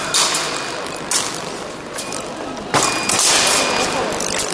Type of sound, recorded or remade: recorded